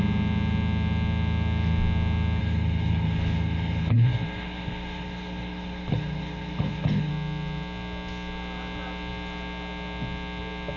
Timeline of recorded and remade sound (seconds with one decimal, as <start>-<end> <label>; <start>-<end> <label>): 0.0-2.4 recorded; 2.4-7.1 remade; 7.1-10.8 recorded